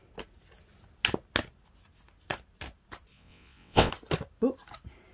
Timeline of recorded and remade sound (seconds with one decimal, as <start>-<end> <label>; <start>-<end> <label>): 0.0-3.1 recorded; 3.1-3.9 remade; 3.9-5.1 recorded